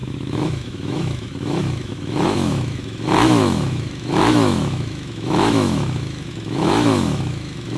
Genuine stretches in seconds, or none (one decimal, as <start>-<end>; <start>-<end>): none